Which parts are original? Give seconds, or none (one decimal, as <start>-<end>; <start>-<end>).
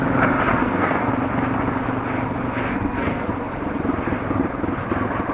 0.0-0.5; 1.1-2.7; 3.5-5.3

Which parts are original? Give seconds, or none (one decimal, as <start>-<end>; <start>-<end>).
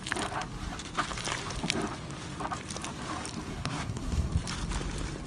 0.0-3.5; 4.3-5.3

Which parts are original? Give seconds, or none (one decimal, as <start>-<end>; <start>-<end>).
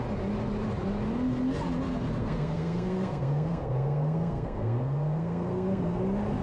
0.0-2.2; 6.0-6.4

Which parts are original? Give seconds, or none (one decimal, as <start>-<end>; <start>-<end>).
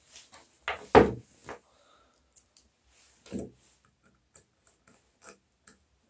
0.0-6.1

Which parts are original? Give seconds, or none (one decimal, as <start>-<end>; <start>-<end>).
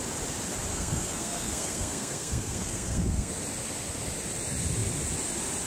0.0-0.7; 3.3-5.7